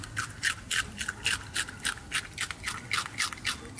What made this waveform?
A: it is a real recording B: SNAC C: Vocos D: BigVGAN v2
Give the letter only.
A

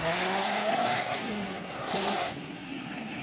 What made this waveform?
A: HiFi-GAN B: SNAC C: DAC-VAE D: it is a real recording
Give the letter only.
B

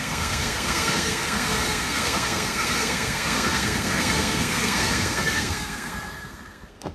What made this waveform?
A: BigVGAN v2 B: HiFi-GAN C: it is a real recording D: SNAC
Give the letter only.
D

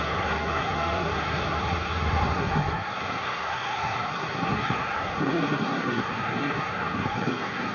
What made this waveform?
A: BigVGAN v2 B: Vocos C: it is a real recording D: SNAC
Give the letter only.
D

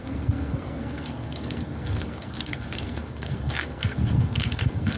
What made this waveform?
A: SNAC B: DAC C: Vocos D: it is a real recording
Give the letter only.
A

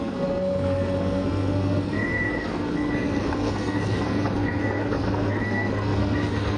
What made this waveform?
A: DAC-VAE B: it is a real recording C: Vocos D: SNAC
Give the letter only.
D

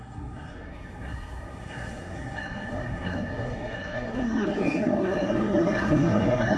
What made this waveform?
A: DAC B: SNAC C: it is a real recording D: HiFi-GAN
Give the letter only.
B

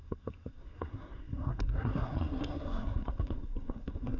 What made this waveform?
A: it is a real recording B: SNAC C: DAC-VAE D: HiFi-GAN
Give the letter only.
B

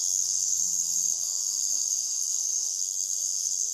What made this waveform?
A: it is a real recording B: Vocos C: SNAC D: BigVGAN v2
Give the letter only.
C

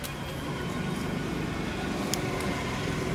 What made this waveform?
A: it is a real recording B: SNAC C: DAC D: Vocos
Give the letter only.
A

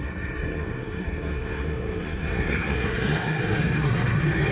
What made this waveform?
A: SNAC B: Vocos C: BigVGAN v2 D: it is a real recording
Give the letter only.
A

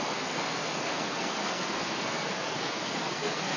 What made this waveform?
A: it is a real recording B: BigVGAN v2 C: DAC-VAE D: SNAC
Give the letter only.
D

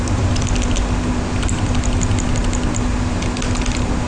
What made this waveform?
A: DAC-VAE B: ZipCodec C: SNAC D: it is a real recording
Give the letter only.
D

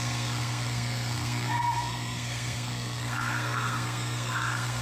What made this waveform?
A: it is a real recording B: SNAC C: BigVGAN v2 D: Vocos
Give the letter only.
B